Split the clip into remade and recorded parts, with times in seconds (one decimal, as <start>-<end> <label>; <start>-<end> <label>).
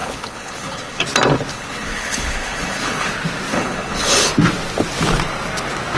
0.0-1.0 remade; 1.0-1.5 recorded; 1.5-3.1 remade; 3.1-3.5 recorded; 3.5-4.3 remade; 4.3-6.0 recorded